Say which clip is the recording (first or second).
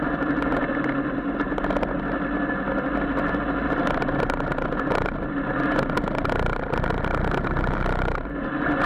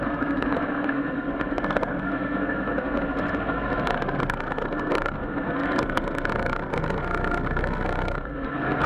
first